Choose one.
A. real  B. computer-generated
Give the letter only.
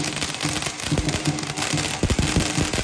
A